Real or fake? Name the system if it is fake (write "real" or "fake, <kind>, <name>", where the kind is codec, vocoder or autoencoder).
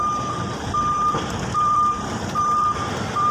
fake, vocoder, BigVGAN v2